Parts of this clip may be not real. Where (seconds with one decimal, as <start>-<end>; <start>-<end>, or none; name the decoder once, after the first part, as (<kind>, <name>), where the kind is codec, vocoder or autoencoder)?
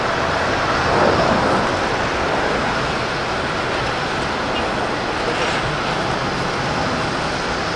none